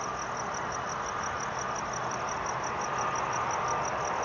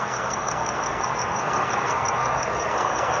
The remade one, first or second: second